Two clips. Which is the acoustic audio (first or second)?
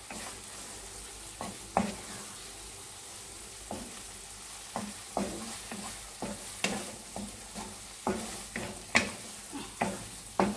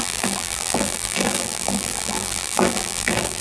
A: first